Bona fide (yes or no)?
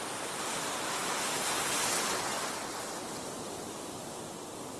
yes